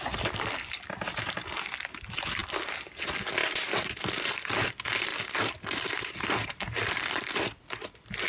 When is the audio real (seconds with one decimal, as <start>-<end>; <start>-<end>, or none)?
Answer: 0.0-2.4; 2.9-5.1; 7.6-8.3